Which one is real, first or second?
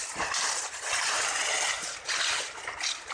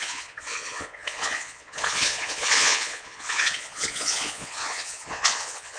first